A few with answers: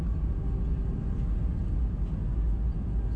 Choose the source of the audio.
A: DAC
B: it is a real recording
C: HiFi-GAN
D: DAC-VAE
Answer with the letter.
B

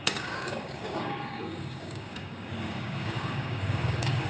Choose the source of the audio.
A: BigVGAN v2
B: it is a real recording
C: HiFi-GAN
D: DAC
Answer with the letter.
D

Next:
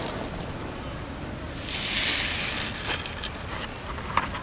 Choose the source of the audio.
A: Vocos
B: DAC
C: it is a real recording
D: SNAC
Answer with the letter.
C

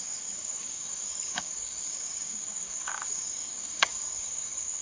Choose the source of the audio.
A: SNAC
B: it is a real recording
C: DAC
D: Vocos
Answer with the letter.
C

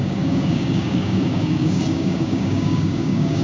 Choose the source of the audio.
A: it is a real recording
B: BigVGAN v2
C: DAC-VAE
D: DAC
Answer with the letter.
D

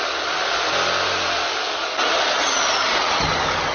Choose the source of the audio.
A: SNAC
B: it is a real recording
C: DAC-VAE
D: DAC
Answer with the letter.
B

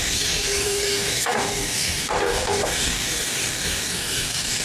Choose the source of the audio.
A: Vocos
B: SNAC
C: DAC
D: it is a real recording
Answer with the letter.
C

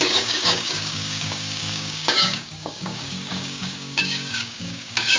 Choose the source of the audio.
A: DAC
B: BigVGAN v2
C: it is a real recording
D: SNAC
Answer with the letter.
A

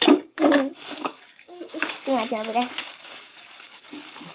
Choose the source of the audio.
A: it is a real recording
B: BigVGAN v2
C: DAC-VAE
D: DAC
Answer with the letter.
D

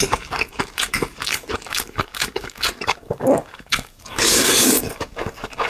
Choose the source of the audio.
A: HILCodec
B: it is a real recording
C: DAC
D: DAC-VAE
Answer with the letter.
C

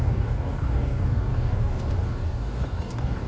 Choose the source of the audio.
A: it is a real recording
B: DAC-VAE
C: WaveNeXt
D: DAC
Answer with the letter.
D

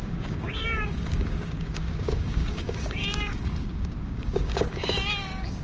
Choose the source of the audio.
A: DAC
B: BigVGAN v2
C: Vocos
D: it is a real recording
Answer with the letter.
A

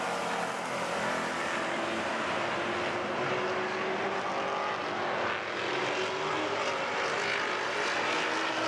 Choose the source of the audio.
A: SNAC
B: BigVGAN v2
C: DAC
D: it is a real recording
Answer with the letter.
D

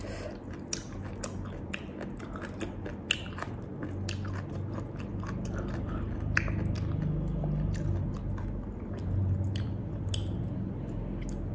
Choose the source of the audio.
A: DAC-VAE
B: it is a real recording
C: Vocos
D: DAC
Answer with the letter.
B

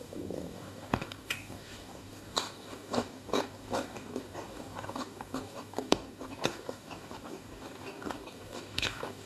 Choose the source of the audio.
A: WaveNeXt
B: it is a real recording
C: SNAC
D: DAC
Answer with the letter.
D